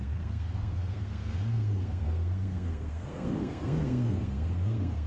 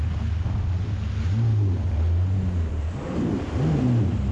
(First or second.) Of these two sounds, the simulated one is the first